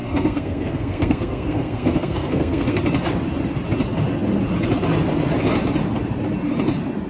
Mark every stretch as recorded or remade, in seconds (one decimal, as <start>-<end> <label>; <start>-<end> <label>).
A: 0.0-2.8 remade; 2.8-7.1 recorded